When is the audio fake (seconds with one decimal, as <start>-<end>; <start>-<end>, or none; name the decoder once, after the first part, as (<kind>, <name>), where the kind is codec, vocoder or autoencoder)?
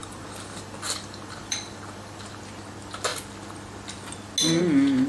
0.0-2.4 (vocoder, BigVGAN v2)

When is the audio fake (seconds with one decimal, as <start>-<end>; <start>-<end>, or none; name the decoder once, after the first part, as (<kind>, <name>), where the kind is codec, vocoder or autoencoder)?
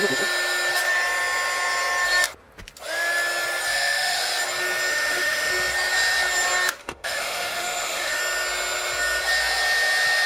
3.7-4.2 (autoencoder, DAC-VAE); 4.9-5.5; 6.8-8.2